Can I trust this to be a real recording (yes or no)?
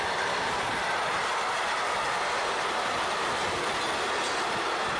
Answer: yes